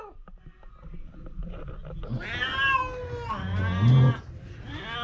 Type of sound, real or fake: real